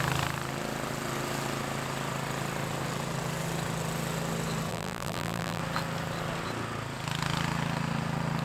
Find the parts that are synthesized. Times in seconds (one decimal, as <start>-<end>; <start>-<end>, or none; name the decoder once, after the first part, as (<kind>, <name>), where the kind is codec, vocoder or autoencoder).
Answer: 4.7-5.6 (vocoder, BigVGAN v2)